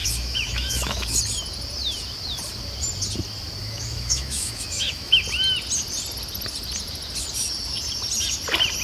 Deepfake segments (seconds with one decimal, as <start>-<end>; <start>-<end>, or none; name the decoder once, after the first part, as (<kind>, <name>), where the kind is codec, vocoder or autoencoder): 0.0-1.2 (autoencoder, DAC-VAE); 3.6-5.2